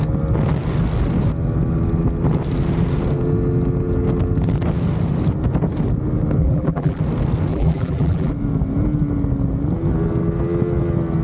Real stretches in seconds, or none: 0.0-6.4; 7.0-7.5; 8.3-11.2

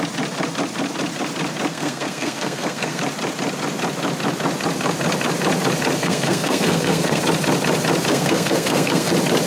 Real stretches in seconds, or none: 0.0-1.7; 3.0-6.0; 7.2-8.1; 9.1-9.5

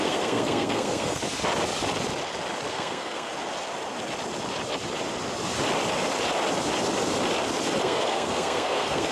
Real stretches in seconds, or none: 1.2-2.7; 3.3-7.8